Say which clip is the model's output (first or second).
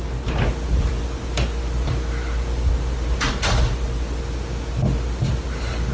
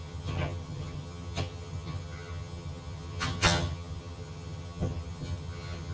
second